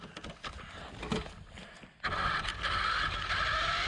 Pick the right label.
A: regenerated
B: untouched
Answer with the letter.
B